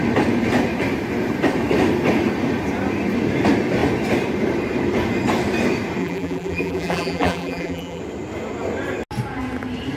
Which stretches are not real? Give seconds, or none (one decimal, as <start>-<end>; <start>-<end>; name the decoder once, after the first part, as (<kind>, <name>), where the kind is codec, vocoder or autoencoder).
6.0-8.0 (vocoder, BigVGAN v2)